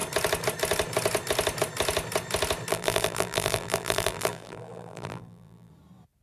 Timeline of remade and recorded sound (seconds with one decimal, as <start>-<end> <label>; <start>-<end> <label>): 0.0-2.7 recorded; 2.7-5.7 remade; 5.7-6.2 recorded